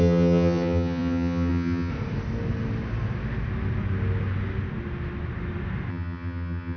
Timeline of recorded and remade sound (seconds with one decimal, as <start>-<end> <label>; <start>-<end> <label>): 0.0-1.9 remade; 1.9-5.9 recorded; 5.9-6.8 remade